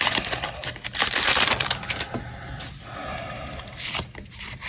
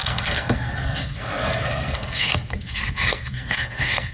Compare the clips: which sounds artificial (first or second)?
second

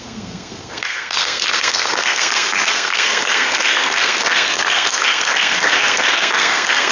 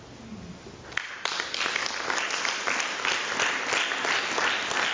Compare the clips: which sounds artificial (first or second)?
first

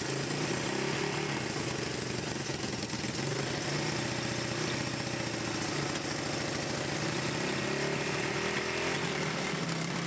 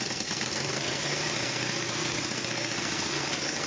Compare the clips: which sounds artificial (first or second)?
second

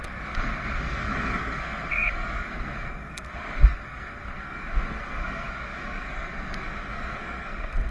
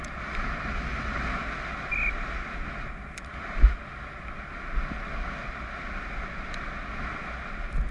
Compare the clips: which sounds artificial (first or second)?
first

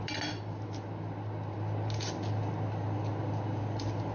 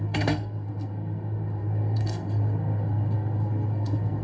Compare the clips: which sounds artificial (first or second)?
second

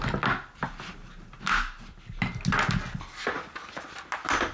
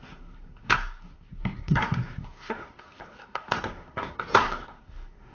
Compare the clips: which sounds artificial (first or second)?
second